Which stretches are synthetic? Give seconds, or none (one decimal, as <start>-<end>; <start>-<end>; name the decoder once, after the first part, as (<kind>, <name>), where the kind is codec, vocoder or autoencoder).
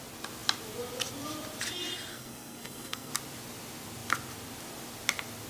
2.1-3.1 (codec, SNAC)